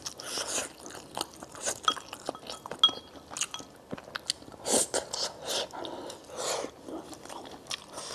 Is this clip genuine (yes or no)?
yes